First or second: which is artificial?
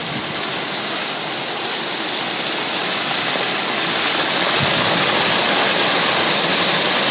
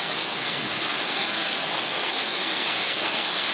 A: second